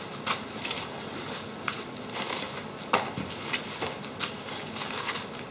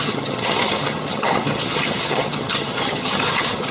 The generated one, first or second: second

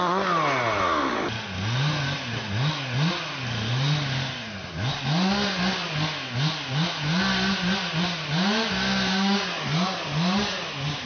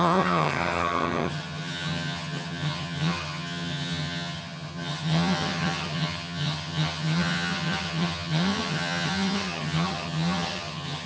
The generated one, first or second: second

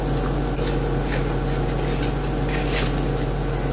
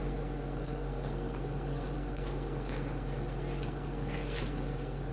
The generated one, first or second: second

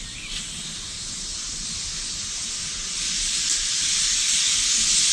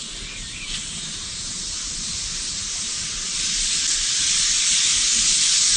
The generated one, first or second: second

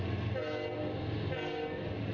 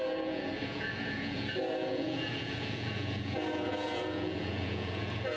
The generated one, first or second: second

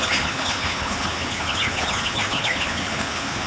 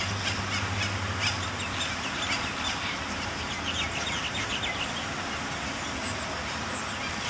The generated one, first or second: first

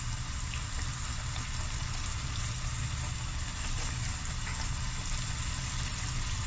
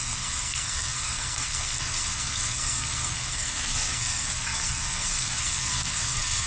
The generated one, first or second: second